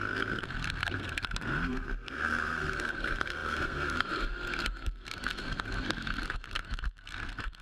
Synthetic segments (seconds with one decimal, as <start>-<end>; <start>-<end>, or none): 0.0-7.6